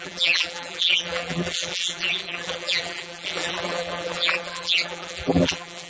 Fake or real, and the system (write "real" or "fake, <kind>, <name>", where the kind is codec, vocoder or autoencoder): fake, vocoder, BigVGAN v2